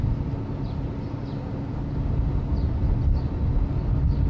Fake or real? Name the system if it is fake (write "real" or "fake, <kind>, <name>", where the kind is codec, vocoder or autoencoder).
real